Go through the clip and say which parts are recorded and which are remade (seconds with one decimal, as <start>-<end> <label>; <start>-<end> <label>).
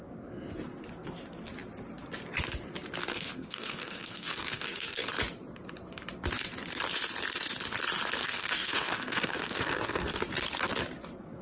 0.0-3.1 recorded; 3.1-5.1 remade; 5.1-8.2 recorded; 8.2-10.2 remade; 10.2-11.4 recorded